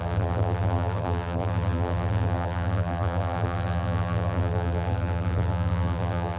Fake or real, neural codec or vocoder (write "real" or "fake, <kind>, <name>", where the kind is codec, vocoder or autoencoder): fake, vocoder, BigVGAN v2